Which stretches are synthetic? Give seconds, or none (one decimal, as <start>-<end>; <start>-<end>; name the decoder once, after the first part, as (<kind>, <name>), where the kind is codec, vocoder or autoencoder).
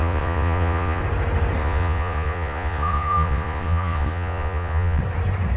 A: 0.0-1.0 (vocoder, Vocos); 1.6-5.0